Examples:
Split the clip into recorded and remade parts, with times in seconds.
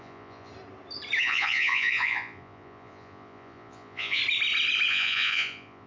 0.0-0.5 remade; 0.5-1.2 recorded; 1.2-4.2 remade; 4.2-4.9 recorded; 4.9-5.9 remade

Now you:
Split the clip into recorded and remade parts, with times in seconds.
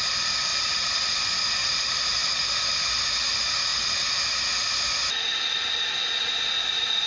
0.0-0.5 recorded; 0.5-1.2 remade; 1.2-1.6 recorded; 1.6-2.3 remade; 2.3-7.1 recorded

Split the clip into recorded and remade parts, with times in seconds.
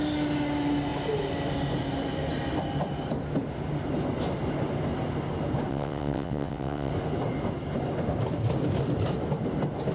0.0-5.7 recorded; 5.7-6.9 remade; 6.9-9.9 recorded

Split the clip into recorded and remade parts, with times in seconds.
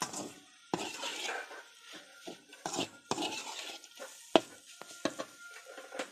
0.0-1.1 remade; 1.1-2.7 recorded; 2.7-3.4 remade; 3.4-5.2 recorded; 5.2-6.1 remade